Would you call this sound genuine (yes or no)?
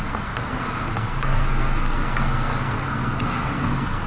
no